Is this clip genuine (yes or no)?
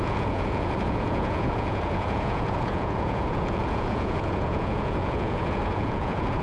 no